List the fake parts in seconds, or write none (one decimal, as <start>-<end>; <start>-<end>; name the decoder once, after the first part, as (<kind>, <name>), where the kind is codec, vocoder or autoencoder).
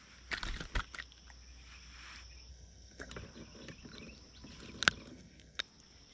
2.5-3.1 (codec, SNAC); 5.1-5.6